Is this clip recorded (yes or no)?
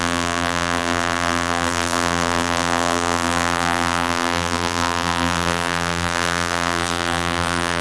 no